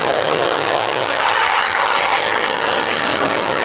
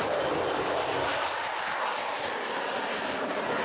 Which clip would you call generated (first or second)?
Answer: first